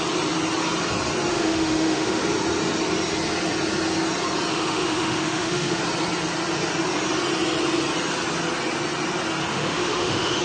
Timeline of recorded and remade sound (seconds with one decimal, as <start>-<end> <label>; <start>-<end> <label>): 0.0-1.3 recorded; 1.3-2.2 remade; 2.2-4.5 recorded; 4.5-5.8 remade; 5.8-9.5 recorded; 9.5-10.4 remade